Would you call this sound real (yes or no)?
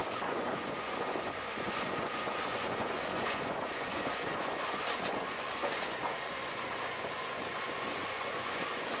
no